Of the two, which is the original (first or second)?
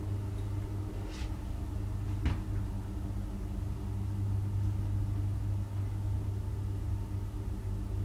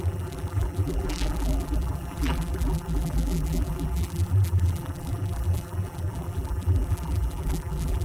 first